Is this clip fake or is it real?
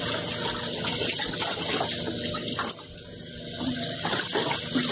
real